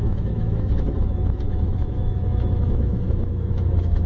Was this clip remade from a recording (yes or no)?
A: yes